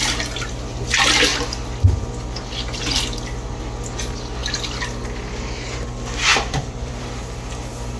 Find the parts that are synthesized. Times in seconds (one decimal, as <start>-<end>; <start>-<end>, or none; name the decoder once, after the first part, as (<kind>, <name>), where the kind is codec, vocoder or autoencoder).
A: 6.3-7.2 (vocoder, BigVGAN v2)